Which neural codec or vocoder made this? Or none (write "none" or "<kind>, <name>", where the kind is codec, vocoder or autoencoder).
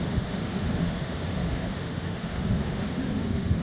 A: autoencoder, DAC-VAE